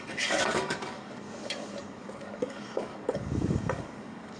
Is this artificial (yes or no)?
yes